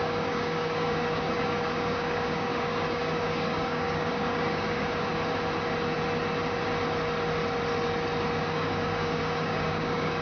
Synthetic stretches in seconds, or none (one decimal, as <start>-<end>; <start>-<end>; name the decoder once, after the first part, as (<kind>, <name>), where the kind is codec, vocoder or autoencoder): 0.0-5.1 (codec, DAC); 8.4-10.2